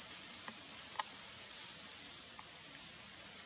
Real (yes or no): yes